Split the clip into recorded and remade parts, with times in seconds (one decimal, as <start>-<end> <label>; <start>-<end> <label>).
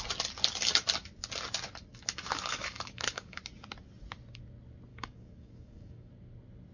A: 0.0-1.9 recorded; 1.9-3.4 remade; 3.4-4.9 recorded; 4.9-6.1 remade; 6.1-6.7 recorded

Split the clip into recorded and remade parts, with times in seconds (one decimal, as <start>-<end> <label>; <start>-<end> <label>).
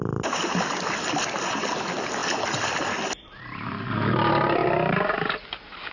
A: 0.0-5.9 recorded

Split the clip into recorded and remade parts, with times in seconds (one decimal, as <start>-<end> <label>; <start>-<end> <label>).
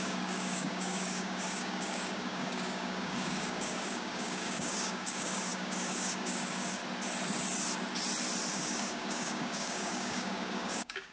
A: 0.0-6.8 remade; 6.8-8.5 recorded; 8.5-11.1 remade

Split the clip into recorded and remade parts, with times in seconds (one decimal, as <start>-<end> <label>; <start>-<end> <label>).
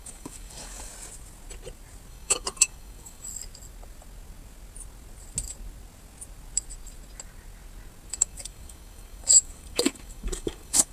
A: 0.0-0.9 remade; 0.9-2.1 recorded; 2.1-3.3 remade; 3.3-8.1 recorded; 8.1-10.9 remade